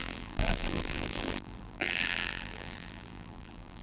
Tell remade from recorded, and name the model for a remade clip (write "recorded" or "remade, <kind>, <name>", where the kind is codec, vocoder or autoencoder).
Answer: remade, vocoder, BigVGAN v2